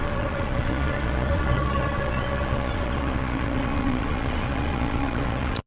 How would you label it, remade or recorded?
remade